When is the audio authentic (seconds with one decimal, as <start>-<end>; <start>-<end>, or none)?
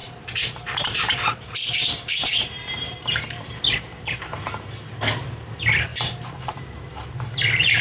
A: 3.6-5.9; 6.8-7.8